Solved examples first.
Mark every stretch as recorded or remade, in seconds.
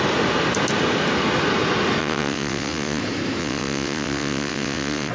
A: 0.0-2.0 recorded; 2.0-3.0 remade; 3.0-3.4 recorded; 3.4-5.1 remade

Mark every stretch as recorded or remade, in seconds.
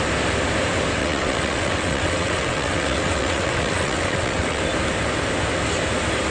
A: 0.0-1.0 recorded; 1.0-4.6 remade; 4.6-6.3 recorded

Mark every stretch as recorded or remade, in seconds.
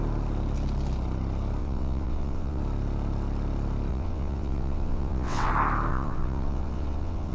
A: 0.0-1.6 recorded; 1.6-2.6 remade; 2.6-3.9 recorded; 3.9-5.5 remade; 5.5-5.9 recorded; 5.9-7.3 remade